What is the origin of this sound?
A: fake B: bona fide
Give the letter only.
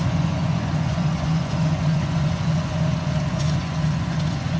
A